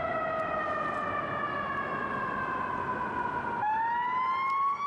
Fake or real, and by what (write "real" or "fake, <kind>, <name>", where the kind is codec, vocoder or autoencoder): real